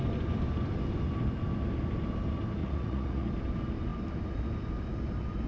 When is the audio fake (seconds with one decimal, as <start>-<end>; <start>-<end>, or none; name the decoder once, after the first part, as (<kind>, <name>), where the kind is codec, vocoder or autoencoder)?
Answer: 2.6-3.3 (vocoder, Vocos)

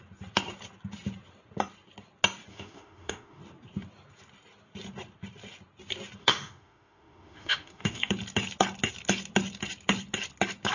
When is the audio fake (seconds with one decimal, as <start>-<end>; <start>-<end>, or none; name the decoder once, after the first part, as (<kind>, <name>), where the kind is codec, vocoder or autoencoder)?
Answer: 2.5-3.4 (autoencoder, DAC-VAE); 6.2-8.1

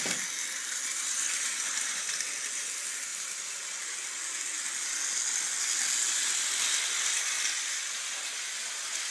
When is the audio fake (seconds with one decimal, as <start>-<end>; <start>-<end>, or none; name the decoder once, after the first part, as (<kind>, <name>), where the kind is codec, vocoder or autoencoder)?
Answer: 0.9-2.2 (vocoder, BigVGAN v2)